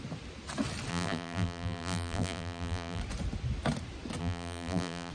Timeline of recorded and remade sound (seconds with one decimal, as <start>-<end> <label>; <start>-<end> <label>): 0.0-0.9 recorded; 0.9-3.0 remade; 3.0-4.2 recorded; 4.2-5.1 remade